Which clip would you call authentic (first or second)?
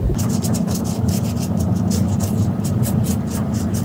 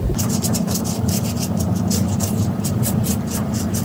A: first